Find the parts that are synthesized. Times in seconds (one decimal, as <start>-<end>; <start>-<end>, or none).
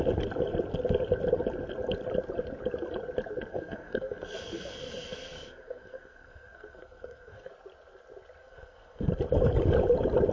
3.5-7.5; 8.4-9.1